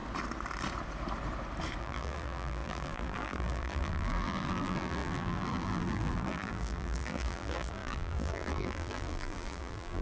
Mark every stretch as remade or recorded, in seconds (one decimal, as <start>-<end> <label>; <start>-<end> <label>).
0.0-1.8 recorded; 1.8-10.0 remade